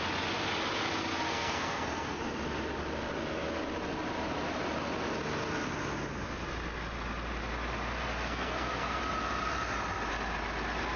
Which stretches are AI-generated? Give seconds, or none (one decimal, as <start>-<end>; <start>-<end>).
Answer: 1.3-2.2; 8.1-9.0